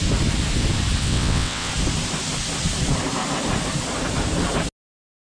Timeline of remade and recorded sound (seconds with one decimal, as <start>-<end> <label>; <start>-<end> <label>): 0.0-1.0 recorded; 1.0-1.7 remade; 1.7-5.3 recorded